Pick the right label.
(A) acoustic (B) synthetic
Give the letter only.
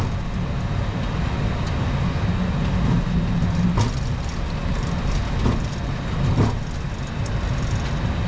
A